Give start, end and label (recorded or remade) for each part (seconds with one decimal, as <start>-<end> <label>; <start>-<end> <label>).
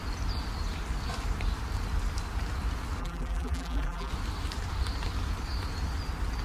0.0-3.0 recorded; 3.0-4.1 remade; 4.1-6.4 recorded